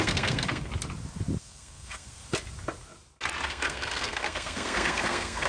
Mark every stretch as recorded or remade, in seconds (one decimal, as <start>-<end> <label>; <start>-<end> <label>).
0.0-0.7 remade; 0.7-1.4 recorded; 1.4-2.2 remade; 2.2-3.5 recorded; 3.5-5.5 remade